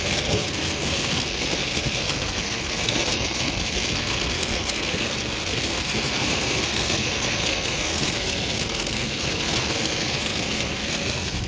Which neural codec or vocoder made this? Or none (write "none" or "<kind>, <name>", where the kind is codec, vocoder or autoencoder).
codec, SNAC